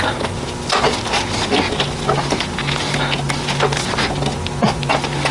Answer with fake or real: real